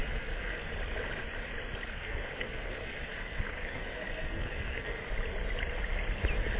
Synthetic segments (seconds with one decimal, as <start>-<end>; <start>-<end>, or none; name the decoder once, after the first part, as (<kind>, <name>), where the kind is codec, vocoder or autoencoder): 0.0-0.7 (codec, SNAC); 1.9-5.0

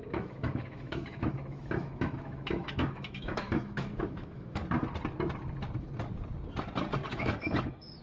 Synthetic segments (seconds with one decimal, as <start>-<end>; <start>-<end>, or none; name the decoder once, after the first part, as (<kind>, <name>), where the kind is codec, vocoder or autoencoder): 0.0-4.6 (autoencoder, DAC-VAE); 7.1-8.0

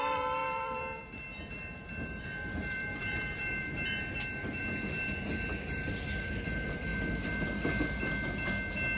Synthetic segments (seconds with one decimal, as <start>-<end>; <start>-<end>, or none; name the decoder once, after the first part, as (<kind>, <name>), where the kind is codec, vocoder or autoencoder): 0.0-4.6 (vocoder, BigVGAN v2); 5.9-6.9

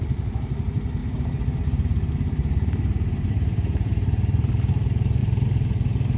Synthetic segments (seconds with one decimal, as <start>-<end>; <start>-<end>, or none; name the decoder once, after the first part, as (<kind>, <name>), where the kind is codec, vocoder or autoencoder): 1.0-4.7 (vocoder, BigVGAN v2); 5.2-6.2